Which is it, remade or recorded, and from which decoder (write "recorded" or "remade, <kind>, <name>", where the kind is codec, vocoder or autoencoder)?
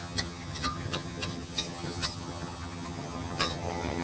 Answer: remade, vocoder, HiFi-GAN